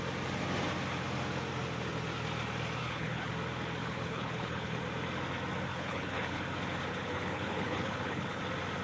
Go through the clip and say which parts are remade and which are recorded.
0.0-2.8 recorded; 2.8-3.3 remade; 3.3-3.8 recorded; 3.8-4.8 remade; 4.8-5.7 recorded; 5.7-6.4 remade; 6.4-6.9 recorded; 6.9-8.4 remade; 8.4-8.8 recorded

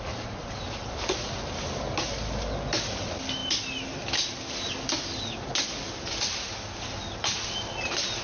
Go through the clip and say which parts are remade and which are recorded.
0.0-8.2 recorded

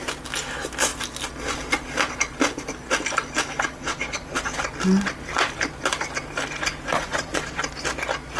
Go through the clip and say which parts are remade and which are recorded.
0.0-3.7 recorded; 3.7-4.6 remade; 4.6-6.9 recorded; 6.9-7.6 remade; 7.6-8.4 recorded

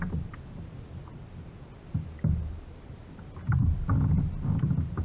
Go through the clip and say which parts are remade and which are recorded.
0.0-1.1 recorded; 1.1-1.7 remade; 1.7-3.6 recorded; 3.6-4.6 remade; 4.6-5.0 recorded

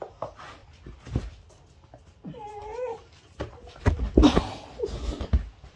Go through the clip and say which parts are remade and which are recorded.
0.0-5.8 recorded

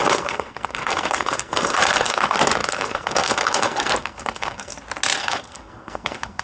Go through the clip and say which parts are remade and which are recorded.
0.0-4.7 remade; 4.7-5.2 recorded; 5.2-6.4 remade

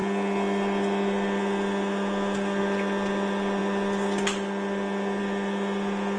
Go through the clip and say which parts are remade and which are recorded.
0.0-6.2 recorded

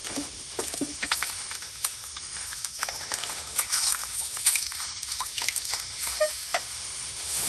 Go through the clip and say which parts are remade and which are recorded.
0.0-7.5 remade